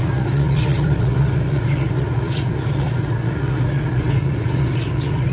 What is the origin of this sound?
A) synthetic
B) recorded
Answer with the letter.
A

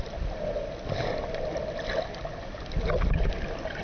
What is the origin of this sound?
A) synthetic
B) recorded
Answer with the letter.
B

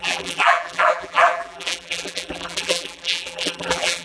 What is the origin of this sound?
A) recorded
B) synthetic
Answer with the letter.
B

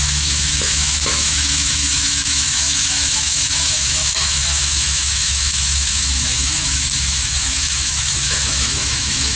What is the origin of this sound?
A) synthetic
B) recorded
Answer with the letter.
A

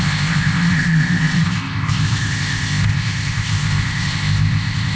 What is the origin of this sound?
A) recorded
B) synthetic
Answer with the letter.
B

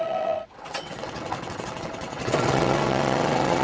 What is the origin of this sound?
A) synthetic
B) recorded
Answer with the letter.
A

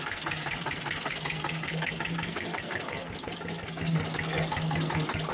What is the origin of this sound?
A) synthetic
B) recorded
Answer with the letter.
A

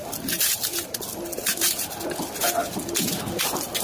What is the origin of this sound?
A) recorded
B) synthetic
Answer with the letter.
A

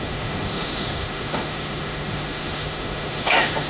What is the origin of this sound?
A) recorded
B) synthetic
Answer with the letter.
B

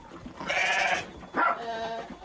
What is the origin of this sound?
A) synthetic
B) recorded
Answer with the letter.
B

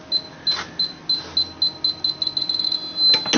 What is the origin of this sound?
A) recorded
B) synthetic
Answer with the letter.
A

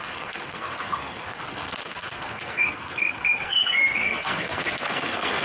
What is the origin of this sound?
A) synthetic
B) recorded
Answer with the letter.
A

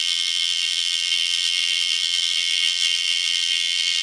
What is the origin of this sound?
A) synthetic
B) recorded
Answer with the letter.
A